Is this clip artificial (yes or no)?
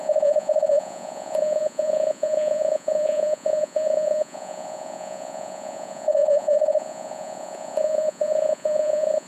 yes